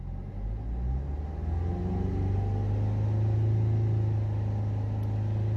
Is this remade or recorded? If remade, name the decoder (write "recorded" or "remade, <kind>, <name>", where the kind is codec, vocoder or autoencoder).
recorded